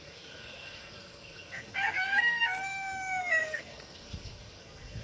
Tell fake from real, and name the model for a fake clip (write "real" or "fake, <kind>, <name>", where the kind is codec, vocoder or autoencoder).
fake, codec, SNAC